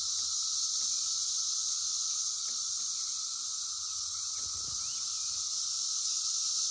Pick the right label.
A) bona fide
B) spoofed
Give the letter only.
A